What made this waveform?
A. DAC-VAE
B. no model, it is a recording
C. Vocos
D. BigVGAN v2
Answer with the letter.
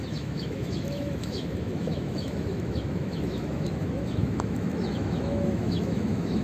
A